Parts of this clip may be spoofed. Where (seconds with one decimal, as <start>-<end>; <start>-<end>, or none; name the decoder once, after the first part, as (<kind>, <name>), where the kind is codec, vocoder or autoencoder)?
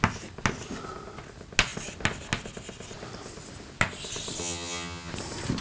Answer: 4.4-5.1 (vocoder, HiFi-GAN)